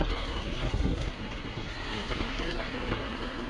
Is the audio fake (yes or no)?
yes